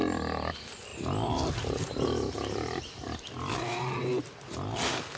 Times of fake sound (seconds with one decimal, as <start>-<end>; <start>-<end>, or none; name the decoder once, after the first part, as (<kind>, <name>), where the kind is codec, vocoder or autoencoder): none